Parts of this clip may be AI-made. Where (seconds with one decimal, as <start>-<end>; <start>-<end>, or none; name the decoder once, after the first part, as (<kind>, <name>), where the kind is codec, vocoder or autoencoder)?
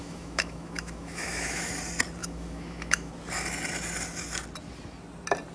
0.0-1.7 (autoencoder, DAC-VAE); 2.2-3.1